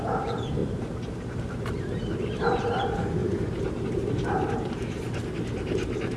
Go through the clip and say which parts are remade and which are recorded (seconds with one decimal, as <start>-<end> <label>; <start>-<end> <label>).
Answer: 0.0-3.2 remade; 3.2-3.8 recorded; 3.8-6.2 remade